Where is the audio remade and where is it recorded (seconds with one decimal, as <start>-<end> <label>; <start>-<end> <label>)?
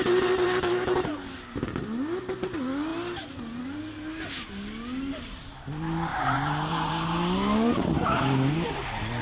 0.0-6.1 recorded; 6.1-6.9 remade; 6.9-9.2 recorded